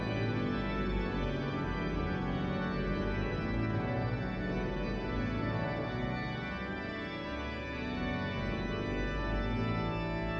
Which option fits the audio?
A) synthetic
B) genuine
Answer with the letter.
B